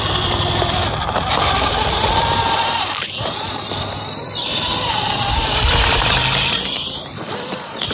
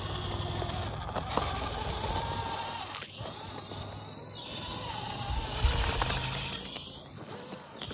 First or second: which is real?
second